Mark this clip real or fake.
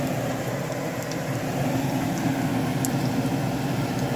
real